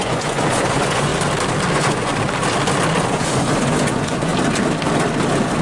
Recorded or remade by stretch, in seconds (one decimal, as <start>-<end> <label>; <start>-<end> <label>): 0.0-1.1 remade; 1.1-1.7 recorded; 1.7-2.1 remade; 2.1-3.1 recorded; 3.1-4.3 remade; 4.3-5.6 recorded